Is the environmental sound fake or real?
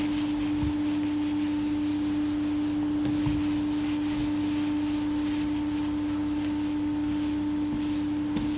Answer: real